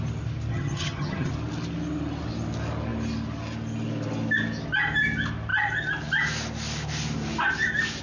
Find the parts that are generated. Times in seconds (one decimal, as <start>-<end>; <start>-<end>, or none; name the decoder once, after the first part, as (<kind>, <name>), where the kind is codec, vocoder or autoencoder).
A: 0.5-1.3 (vocoder, HiFi-GAN)